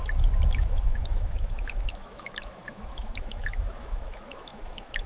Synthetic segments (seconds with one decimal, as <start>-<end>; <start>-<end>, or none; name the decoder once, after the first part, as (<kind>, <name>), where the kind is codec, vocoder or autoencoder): 0.6-5.1 (autoencoder, DAC-VAE)